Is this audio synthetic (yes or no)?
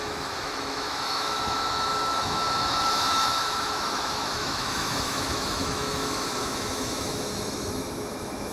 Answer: yes